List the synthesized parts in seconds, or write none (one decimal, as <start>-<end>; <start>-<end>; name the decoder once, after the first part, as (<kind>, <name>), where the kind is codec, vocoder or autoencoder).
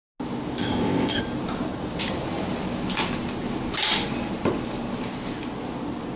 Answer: 0.6-1.2 (codec, ZipCodec)